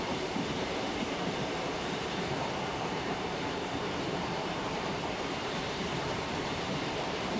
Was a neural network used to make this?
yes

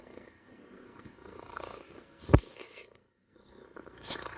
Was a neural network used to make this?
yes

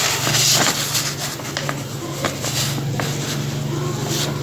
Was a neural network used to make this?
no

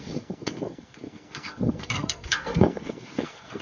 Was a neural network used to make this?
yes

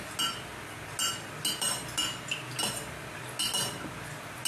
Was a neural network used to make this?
no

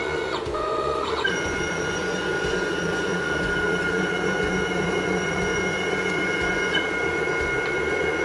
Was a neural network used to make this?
yes